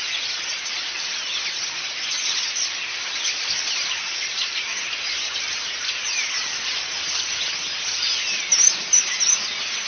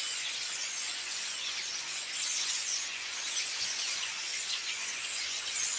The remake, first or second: second